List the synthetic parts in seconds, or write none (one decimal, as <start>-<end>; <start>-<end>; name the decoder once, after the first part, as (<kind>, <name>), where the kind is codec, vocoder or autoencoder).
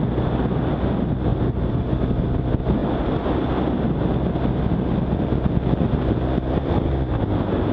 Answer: 1.3-1.9 (vocoder, BigVGAN v2)